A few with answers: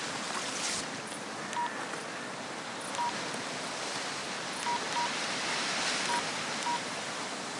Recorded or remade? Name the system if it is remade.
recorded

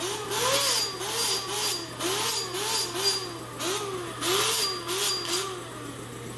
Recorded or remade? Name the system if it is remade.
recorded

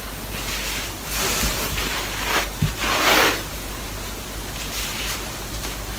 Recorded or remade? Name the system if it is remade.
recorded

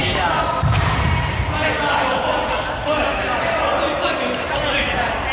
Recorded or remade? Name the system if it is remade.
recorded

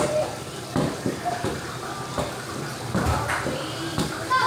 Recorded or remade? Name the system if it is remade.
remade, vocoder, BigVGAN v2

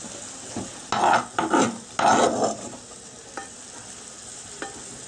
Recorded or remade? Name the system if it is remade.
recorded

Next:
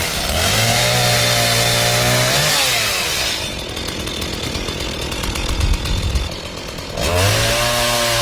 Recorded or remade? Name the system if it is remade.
recorded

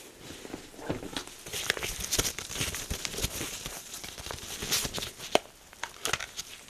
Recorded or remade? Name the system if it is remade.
recorded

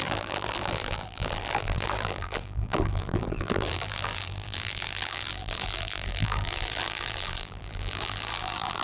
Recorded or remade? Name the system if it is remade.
remade, vocoder, BigVGAN v2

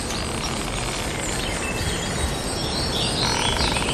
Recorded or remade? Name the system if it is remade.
recorded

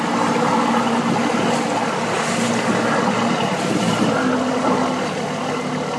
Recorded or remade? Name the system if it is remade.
recorded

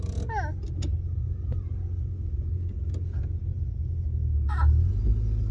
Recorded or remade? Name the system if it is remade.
recorded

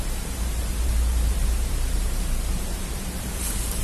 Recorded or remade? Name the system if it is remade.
remade, vocoder, BigVGAN v2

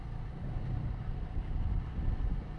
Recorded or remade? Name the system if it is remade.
recorded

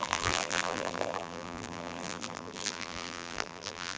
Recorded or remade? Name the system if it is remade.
remade, vocoder, BigVGAN v2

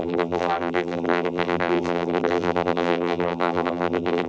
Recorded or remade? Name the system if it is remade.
remade, vocoder, BigVGAN v2